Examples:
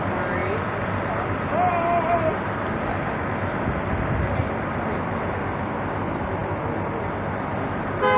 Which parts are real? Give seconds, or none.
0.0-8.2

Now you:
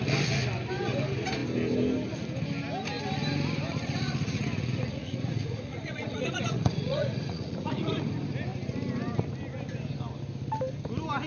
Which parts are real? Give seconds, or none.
0.0-3.7; 7.9-11.3